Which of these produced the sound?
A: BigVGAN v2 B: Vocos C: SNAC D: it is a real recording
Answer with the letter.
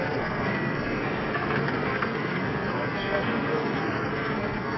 C